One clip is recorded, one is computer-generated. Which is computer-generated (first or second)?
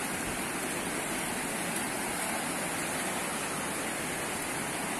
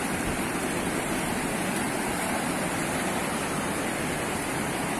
second